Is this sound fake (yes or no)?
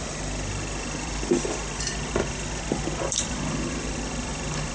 yes